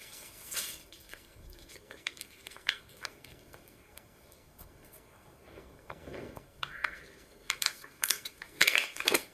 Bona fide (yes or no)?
no